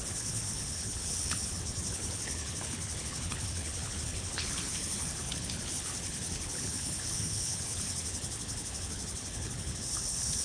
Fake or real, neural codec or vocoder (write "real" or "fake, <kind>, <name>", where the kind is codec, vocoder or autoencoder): fake, codec, HILCodec